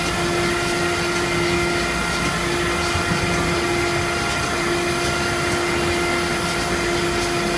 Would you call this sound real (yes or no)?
yes